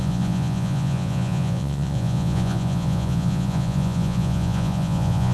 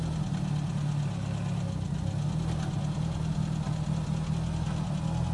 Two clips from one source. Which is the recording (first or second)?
second